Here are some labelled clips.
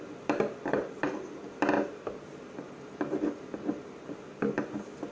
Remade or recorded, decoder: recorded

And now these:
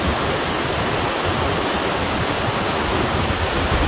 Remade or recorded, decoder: remade, vocoder, BigVGAN v2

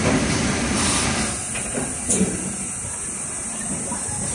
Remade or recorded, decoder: remade, vocoder, BigVGAN v2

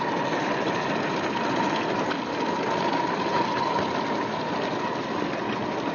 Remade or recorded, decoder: recorded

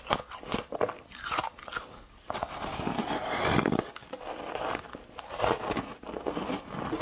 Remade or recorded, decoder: recorded